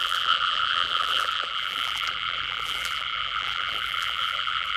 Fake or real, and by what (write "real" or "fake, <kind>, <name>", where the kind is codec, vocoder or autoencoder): fake, vocoder, BigVGAN v2